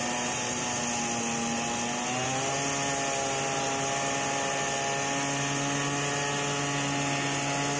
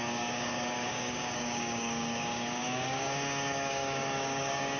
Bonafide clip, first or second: first